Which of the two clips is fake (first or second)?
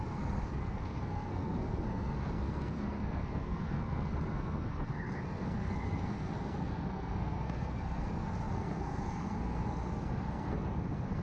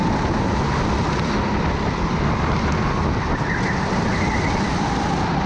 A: first